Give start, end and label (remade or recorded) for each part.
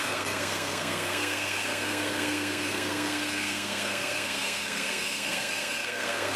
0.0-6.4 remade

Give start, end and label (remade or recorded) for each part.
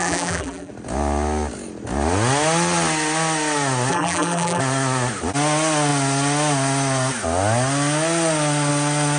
0.0-0.7 remade; 0.7-3.9 recorded; 3.9-4.6 remade; 4.6-9.2 recorded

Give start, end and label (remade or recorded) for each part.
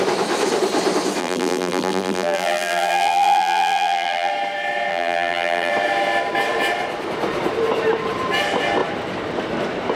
0.0-1.2 recorded; 1.2-4.3 remade; 4.3-4.9 recorded; 4.9-5.7 remade; 5.7-10.0 recorded